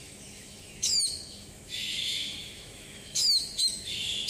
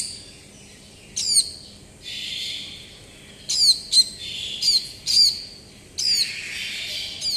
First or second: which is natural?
second